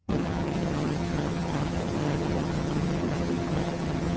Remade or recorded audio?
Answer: remade